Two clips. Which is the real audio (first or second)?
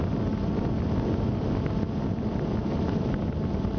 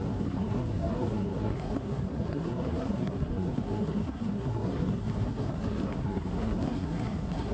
first